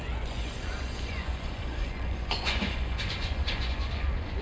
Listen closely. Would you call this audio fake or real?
fake